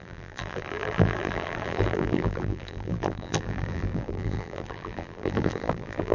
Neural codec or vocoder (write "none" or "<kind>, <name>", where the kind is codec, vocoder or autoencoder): vocoder, BigVGAN v2